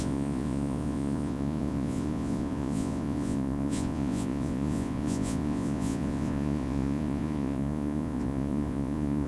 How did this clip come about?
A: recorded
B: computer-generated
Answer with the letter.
B